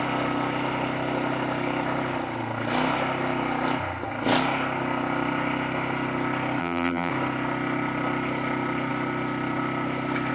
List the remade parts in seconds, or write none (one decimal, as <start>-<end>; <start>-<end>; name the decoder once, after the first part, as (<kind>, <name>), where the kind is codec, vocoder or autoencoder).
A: 6.6-7.1 (vocoder, BigVGAN v2)